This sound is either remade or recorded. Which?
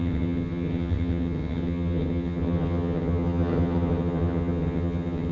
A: remade